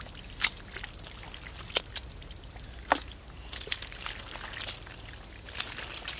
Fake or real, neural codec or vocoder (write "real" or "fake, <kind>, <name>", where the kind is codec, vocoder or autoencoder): real